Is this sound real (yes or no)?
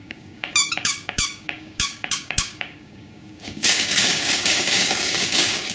no